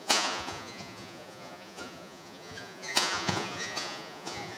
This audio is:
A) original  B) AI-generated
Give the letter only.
B